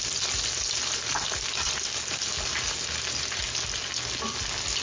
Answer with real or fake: real